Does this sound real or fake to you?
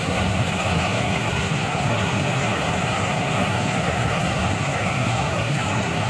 fake